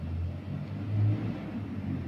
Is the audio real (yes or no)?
yes